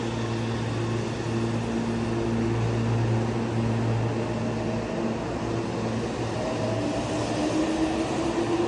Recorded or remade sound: recorded